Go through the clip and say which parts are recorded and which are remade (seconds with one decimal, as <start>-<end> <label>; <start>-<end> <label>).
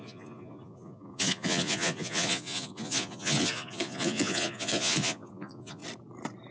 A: 0.0-5.8 remade; 5.8-6.5 recorded